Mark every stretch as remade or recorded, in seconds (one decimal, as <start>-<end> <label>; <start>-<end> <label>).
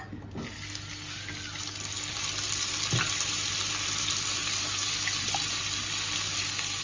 0.0-6.8 recorded